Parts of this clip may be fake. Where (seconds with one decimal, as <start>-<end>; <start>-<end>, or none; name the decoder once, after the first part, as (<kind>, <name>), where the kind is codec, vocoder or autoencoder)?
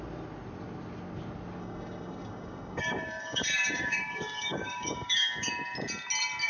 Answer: 1.6-5.5 (codec, DAC)